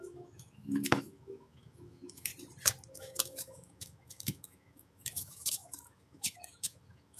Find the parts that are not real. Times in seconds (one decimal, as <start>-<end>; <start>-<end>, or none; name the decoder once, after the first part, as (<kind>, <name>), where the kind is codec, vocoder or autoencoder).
0.0-2.3 (autoencoder, DAC-VAE); 2.9-7.2